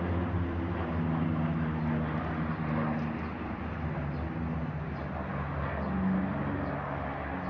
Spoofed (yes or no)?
no